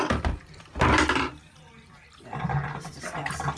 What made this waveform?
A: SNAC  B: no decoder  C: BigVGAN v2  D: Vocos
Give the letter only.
B